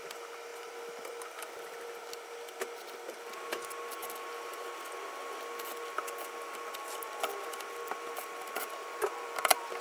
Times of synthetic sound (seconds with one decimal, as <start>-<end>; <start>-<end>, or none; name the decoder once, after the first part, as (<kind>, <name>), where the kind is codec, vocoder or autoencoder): none